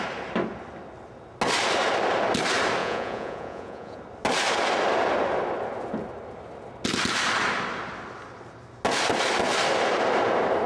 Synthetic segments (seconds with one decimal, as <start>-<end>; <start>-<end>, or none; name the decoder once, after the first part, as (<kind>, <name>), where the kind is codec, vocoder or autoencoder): 2.8-4.0 (vocoder, Vocos)